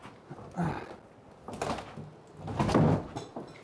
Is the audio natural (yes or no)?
yes